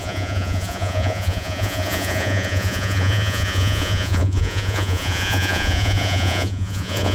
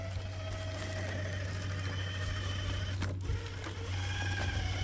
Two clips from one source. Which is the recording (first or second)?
second